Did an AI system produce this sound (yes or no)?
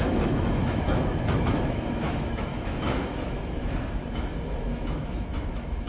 yes